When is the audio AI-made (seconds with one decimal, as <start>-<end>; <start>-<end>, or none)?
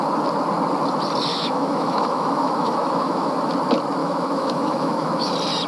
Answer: 1.3-3.3; 4.0-5.3